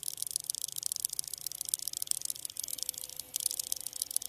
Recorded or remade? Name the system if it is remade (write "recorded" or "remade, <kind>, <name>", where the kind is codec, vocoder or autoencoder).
recorded